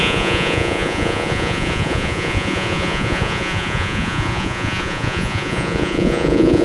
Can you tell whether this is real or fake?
fake